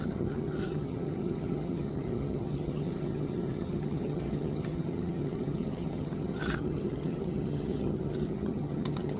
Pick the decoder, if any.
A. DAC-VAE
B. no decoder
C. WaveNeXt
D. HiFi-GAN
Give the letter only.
D